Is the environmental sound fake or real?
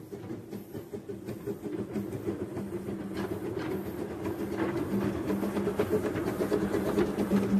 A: real